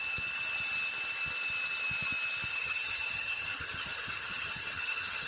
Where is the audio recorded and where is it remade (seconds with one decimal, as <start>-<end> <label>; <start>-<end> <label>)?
0.0-2.5 recorded; 2.5-5.3 remade